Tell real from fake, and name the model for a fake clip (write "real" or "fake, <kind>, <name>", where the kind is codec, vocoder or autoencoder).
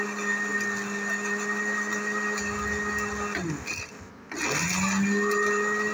real